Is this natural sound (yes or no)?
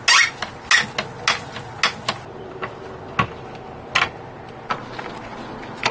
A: yes